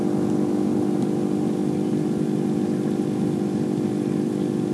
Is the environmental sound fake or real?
real